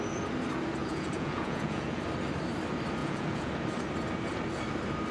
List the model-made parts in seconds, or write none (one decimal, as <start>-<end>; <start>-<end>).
0.8-2.0; 3.0-3.5